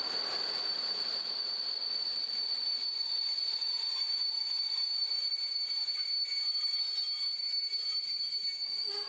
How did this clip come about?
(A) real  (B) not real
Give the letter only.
B